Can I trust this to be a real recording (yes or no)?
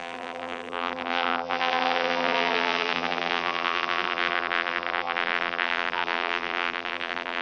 no